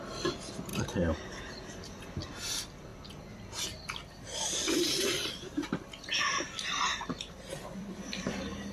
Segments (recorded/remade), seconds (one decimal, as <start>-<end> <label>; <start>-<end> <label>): 0.0-0.7 recorded; 0.7-1.5 remade; 1.5-4.6 recorded; 4.6-5.8 remade; 5.8-6.9 recorded; 6.9-7.5 remade; 7.5-8.7 recorded